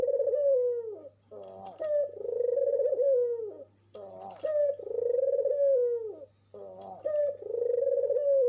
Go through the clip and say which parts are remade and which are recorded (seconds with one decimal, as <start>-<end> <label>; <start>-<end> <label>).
0.0-8.5 recorded